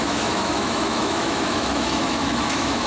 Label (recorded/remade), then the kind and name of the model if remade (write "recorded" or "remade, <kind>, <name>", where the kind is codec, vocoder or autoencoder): remade, autoencoder, DAC-VAE